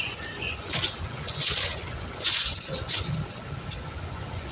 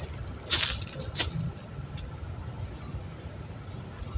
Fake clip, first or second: first